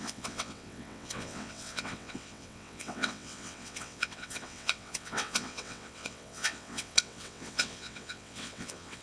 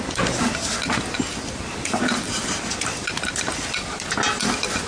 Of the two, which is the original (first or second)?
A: second